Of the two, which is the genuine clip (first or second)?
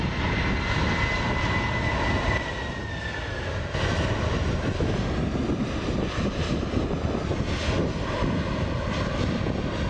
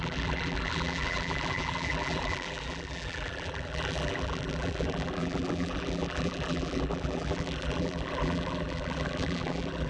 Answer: first